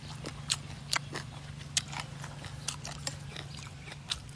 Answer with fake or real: real